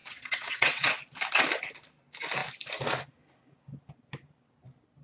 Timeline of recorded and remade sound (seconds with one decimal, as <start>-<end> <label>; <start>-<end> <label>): 0.0-0.9 remade; 0.9-5.0 recorded